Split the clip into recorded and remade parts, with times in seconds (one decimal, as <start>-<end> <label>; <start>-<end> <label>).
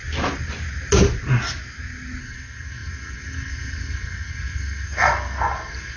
0.0-2.2 recorded; 2.2-6.0 remade